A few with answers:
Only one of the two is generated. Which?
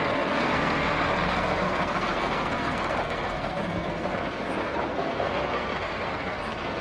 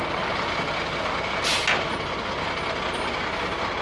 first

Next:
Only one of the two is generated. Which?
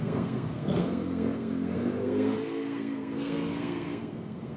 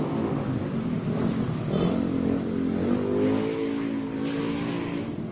first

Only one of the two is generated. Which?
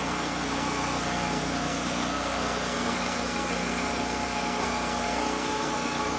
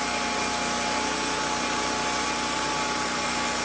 first